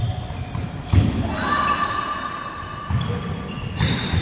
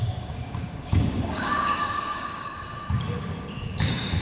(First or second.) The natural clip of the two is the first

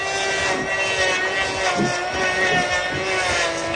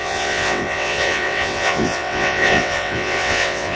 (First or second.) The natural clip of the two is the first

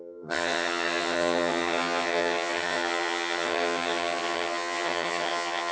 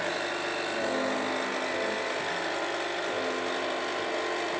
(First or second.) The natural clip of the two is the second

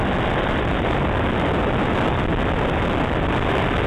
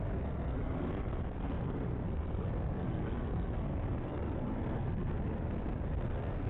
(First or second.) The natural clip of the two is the first